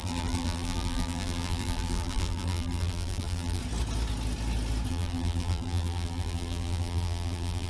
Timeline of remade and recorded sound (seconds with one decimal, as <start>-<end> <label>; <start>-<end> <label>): 0.0-3.6 remade; 3.6-4.9 recorded; 4.9-7.7 remade